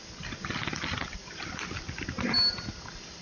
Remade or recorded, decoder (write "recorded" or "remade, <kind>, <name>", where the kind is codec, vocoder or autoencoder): recorded